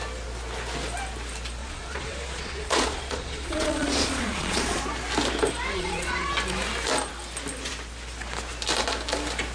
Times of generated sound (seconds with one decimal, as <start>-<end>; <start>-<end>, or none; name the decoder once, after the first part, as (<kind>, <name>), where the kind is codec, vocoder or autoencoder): 1.6-4.8 (vocoder, Vocos); 5.7-6.3